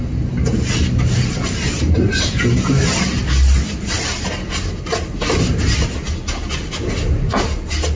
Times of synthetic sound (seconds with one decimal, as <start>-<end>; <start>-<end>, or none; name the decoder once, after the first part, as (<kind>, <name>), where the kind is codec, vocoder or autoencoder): none